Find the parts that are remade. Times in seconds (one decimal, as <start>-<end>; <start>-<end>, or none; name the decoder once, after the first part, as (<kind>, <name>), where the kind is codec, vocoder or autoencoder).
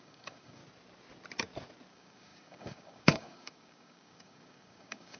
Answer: 0.0-0.6 (codec, DAC); 1.9-5.2